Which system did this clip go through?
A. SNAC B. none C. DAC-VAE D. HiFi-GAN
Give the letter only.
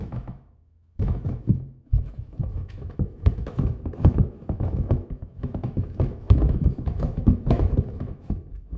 C